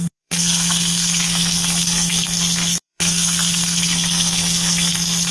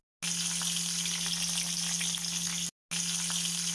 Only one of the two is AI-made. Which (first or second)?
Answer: first